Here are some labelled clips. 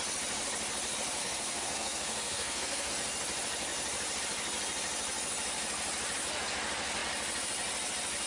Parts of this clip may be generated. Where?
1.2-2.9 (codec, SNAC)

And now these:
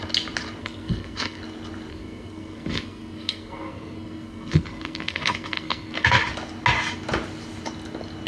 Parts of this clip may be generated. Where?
0.6-1.4 (codec, SNAC); 1.9-6.2

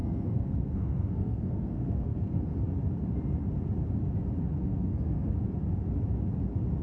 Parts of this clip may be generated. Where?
0.0-2.4 (codec, SNAC); 4.6-5.3

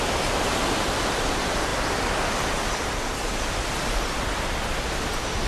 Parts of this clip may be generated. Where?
none

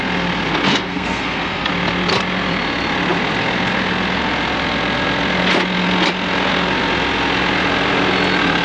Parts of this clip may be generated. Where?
0.7-1.7 (codec, SNAC)

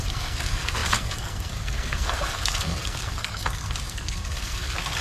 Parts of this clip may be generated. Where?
0.0-5.0 (codec, SNAC)

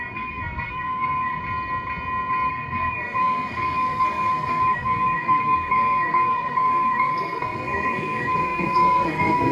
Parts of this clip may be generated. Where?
0.0-1.4 (codec, SNAC); 2.5-9.5